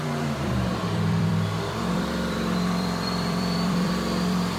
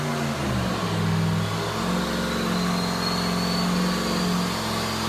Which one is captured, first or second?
second